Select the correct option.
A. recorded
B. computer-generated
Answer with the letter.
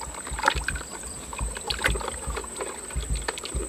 A